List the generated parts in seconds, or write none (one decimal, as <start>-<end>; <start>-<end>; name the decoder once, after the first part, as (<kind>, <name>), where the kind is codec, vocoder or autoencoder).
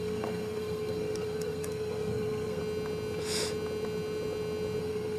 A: 0.0-2.6 (codec, SNAC); 4.8-5.2